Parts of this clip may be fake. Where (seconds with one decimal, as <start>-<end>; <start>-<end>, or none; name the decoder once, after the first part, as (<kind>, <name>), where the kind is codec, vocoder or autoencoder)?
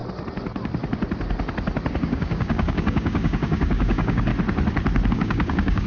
2.0-4.3 (codec, DAC); 5.1-5.9